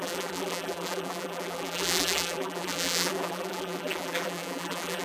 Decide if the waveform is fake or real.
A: fake